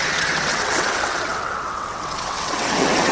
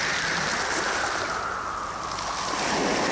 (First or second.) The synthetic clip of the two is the first